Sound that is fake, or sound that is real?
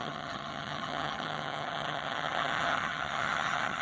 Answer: fake